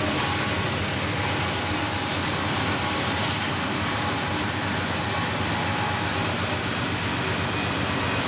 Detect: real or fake real